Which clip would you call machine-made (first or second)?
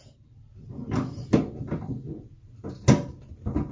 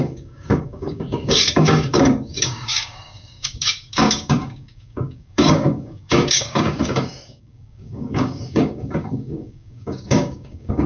second